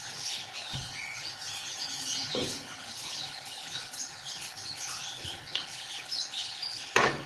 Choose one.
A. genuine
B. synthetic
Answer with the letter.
B